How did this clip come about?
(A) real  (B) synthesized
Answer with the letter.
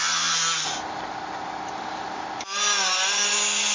A